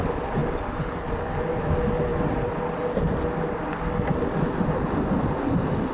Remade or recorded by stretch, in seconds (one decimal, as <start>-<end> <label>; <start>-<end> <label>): 0.0-5.9 recorded

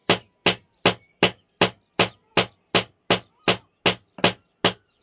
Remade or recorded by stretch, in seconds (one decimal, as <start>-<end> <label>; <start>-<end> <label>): 0.0-5.0 recorded

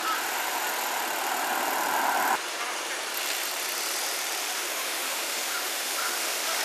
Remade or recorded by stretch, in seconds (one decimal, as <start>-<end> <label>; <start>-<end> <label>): 0.0-4.4 recorded; 4.4-6.6 remade

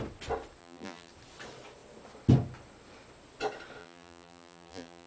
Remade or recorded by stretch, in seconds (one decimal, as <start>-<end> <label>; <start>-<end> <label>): 0.0-0.6 recorded; 0.6-1.1 remade; 1.1-3.8 recorded; 3.8-5.1 remade

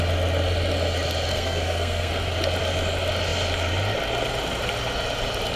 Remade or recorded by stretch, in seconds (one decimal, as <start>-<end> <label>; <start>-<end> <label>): 0.0-1.3 recorded; 1.3-2.1 remade; 2.1-5.6 recorded

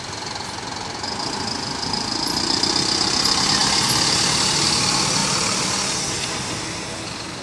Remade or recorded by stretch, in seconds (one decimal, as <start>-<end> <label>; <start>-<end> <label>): 0.0-7.4 recorded